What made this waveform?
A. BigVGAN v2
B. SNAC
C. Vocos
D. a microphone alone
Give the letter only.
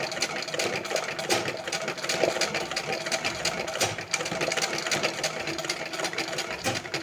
D